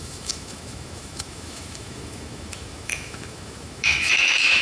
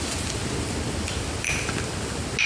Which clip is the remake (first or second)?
first